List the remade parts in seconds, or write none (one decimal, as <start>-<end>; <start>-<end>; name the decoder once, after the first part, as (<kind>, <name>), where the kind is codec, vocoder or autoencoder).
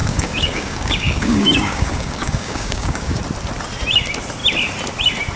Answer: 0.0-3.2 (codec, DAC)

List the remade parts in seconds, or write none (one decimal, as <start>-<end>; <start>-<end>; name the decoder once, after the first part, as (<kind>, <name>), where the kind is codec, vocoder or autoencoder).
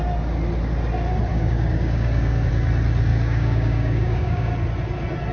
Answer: 1.3-2.5 (codec, DAC); 3.1-4.5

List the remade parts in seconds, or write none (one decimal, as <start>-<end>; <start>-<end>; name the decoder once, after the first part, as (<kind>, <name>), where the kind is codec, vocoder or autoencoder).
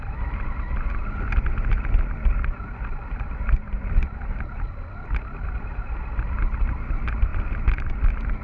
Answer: none